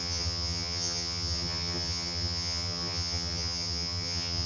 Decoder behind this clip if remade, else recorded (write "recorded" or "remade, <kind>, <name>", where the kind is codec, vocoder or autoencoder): remade, vocoder, HiFi-GAN